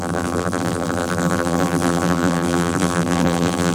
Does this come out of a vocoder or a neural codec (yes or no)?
yes